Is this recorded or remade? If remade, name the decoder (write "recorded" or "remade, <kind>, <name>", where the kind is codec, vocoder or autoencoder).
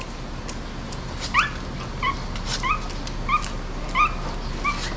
recorded